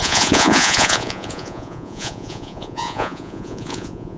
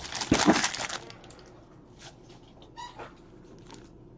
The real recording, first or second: second